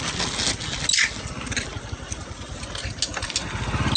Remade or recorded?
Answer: recorded